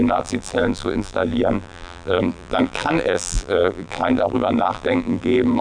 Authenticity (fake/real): fake